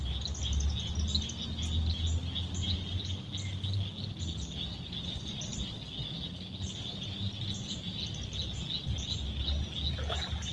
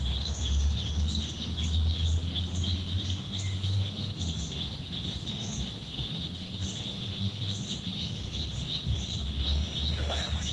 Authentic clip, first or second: first